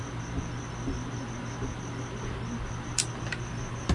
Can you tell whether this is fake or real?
real